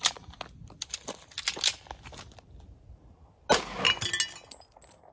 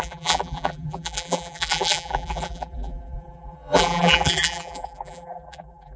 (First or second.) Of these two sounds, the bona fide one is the first